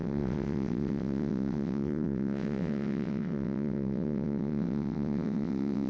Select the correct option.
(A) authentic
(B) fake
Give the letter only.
B